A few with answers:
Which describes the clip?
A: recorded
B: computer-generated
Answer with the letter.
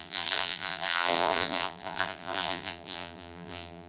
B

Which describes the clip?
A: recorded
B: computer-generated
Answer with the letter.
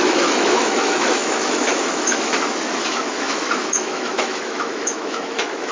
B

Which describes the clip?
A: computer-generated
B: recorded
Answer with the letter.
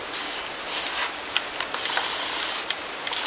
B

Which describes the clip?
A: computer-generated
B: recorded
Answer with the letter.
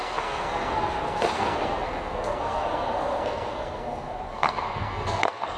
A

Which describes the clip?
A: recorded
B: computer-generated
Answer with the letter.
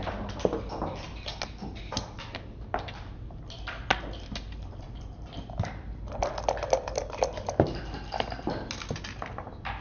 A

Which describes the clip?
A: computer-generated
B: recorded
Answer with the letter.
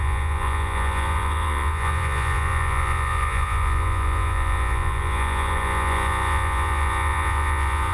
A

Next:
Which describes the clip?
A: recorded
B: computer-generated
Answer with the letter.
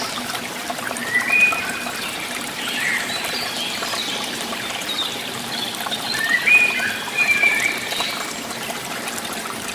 B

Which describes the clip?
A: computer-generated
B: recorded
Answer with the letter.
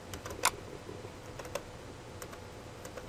B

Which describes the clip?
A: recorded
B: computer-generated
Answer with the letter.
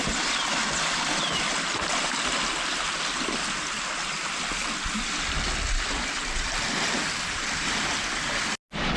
A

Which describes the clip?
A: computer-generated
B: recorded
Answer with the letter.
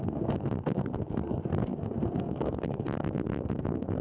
A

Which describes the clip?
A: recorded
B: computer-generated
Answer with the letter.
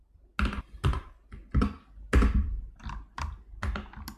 A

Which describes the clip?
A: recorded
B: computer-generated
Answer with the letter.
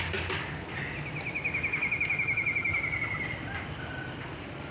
A